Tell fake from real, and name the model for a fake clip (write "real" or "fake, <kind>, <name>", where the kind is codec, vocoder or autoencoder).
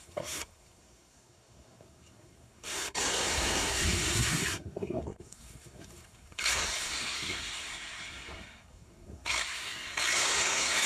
fake, codec, SNAC